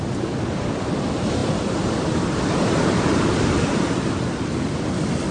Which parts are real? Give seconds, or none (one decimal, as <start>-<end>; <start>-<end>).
none